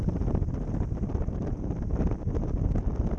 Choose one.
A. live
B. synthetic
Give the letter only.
B